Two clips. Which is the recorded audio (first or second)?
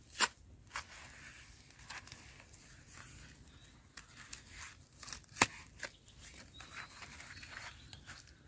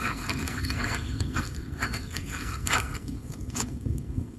first